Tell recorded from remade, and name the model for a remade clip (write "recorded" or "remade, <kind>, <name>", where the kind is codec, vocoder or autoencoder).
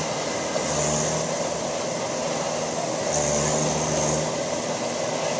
recorded